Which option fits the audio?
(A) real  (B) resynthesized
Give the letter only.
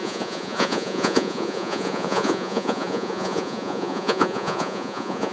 B